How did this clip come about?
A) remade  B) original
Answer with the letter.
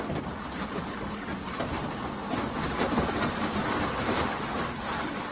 B